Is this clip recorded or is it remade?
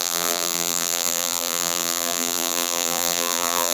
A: remade